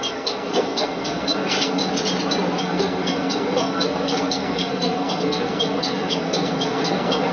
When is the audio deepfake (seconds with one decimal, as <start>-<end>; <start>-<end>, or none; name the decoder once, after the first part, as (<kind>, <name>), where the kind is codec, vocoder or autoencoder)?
0.0-1.8 (codec, SNAC); 2.6-7.3